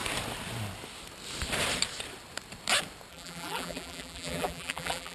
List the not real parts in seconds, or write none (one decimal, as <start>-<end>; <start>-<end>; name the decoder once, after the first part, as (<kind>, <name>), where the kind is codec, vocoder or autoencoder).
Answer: 3.1-5.1 (vocoder, BigVGAN v2)